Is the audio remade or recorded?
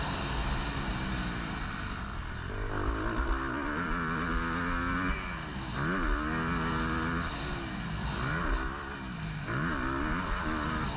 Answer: recorded